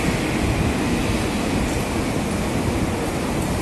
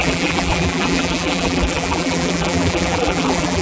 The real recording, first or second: first